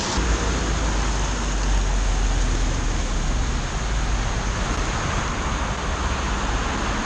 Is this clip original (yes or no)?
yes